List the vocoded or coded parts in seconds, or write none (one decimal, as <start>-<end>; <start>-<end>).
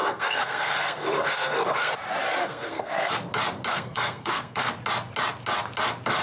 0.0-1.9; 2.4-3.1; 3.7-4.7